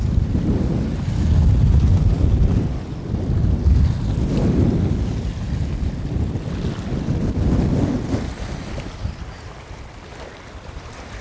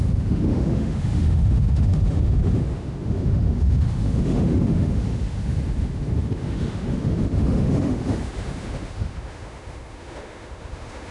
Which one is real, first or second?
first